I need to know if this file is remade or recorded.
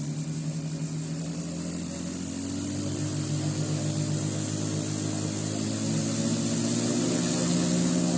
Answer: recorded